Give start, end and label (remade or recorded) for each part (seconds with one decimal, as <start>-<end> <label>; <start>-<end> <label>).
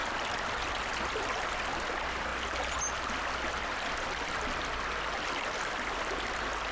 0.0-2.3 remade; 2.3-5.4 recorded; 5.4-6.7 remade